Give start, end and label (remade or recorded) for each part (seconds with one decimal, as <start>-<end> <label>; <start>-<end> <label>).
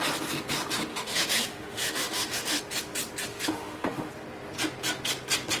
0.0-0.9 recorded; 0.9-2.6 remade; 2.6-3.3 recorded; 3.3-4.1 remade; 4.1-5.6 recorded